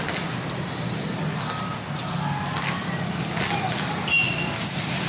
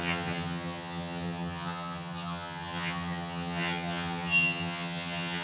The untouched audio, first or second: first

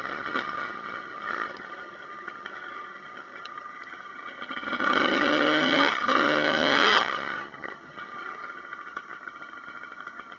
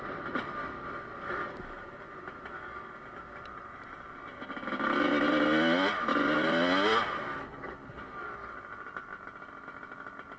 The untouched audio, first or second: second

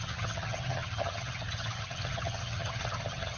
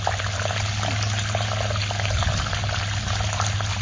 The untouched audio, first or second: second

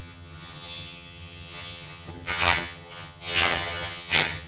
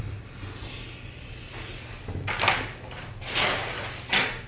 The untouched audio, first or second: second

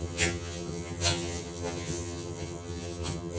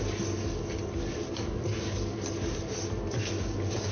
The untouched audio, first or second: second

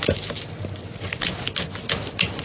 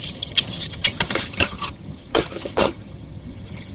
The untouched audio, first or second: first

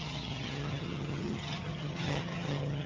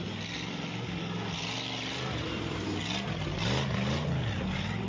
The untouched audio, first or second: second